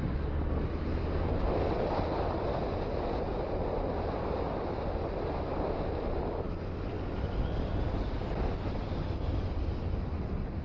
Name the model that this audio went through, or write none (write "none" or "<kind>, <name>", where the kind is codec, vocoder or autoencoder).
none